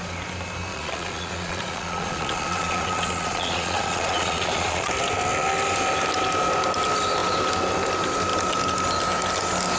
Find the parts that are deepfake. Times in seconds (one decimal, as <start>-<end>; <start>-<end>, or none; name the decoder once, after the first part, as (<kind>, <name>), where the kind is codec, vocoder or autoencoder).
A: 0.7-4.9 (vocoder, Vocos)